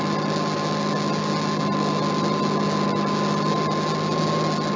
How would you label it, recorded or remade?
recorded